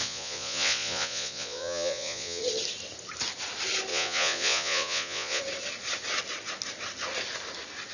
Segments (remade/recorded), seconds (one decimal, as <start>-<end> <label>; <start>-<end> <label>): 0.0-2.4 remade; 2.4-3.9 recorded; 3.9-5.4 remade; 5.4-7.9 recorded